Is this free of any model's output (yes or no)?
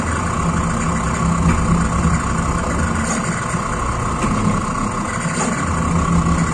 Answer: yes